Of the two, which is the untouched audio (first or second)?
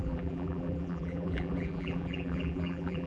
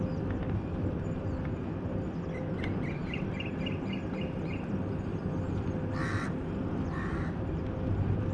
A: second